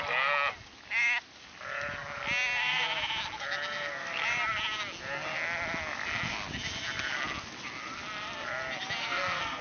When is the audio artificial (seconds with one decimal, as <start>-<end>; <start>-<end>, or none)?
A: 9.0-9.6

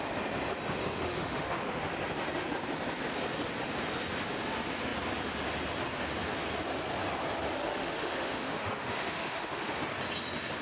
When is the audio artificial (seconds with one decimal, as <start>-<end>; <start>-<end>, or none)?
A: 0.9-1.9; 7.6-9.8

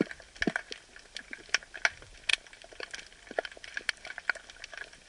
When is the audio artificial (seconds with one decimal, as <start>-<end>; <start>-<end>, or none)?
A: none

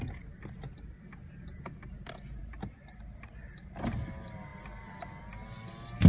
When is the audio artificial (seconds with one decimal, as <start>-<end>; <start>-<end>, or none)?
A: none

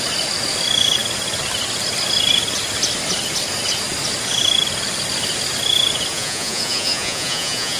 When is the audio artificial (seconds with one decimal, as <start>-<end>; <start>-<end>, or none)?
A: 6.1-7.8

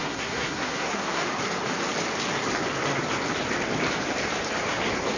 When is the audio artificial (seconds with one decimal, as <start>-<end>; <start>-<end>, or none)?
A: 0.0-1.2

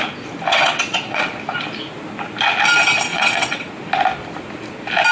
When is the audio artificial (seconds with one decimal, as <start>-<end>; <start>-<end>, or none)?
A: 0.5-1.3; 3.1-3.7